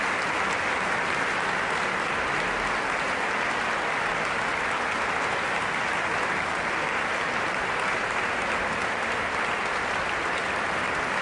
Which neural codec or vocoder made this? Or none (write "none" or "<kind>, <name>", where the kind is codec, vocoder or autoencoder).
none